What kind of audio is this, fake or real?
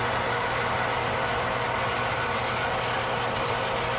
real